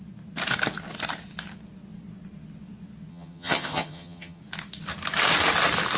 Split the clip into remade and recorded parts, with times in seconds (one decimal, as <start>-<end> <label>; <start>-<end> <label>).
0.0-3.1 recorded; 3.1-4.4 remade; 4.4-6.0 recorded